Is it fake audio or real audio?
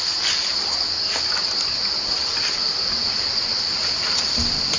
real